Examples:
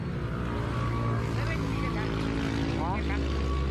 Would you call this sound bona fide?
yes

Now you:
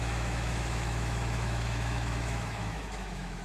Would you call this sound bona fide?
no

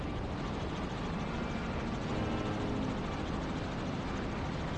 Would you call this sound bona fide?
yes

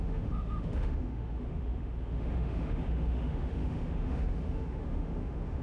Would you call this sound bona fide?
no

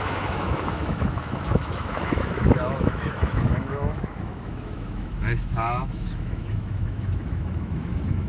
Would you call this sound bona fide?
no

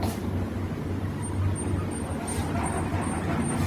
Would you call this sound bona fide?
yes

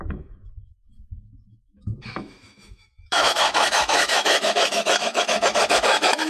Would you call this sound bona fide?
no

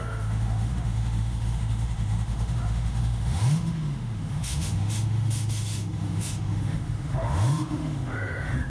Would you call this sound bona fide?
no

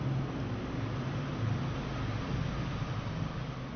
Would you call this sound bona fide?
yes